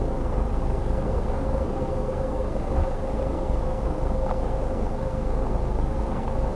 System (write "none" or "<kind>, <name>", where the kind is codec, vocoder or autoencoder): codec, SNAC